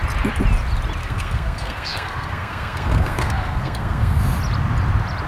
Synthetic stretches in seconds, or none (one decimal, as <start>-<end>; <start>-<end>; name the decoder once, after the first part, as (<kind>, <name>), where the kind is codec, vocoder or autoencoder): 1.0-4.2 (codec, SNAC)